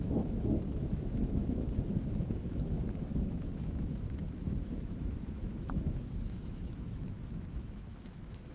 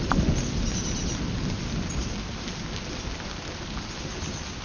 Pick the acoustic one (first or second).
second